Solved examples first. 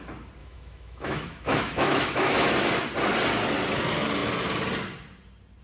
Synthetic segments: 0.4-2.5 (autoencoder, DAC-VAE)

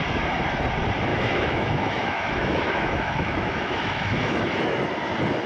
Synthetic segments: 1.1-4.4 (autoencoder, DAC-VAE)

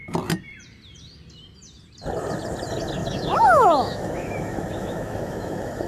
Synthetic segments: 3.0-5.9 (autoencoder, DAC-VAE)